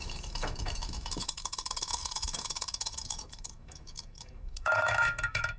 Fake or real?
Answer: fake